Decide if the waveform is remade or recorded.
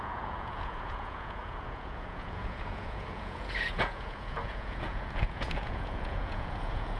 remade